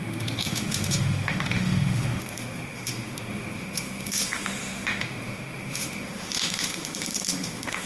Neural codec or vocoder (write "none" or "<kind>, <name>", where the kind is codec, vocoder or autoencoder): autoencoder, DAC-VAE